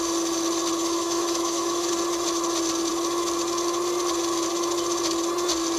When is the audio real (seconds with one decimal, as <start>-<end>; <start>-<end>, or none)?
0.0-0.8; 1.9-5.8